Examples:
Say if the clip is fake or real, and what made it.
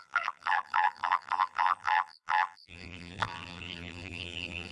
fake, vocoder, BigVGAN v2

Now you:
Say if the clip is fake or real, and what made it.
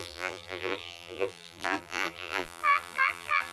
fake, vocoder, BigVGAN v2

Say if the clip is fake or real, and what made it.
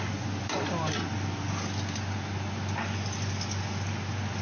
real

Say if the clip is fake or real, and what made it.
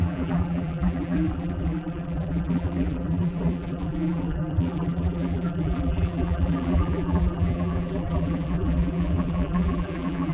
fake, vocoder, BigVGAN v2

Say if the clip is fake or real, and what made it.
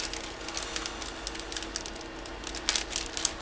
real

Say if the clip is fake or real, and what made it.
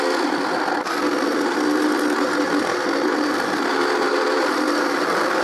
real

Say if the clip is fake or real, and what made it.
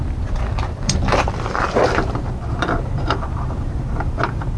fake, vocoder, BigVGAN v2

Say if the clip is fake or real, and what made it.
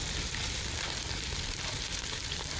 fake, vocoder, BigVGAN v2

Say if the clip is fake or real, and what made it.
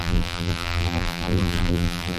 fake, vocoder, BigVGAN v2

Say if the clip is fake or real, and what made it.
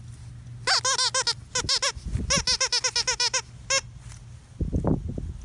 real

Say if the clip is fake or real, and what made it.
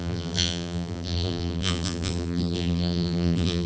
fake, vocoder, BigVGAN v2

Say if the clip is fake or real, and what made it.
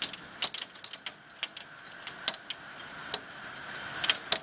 real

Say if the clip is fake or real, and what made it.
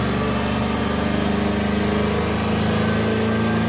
real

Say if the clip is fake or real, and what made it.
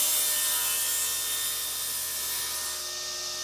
real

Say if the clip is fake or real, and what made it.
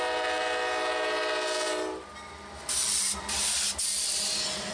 real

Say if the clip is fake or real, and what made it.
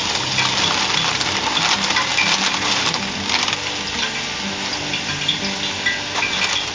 real